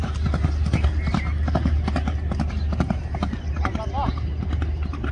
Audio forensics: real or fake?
real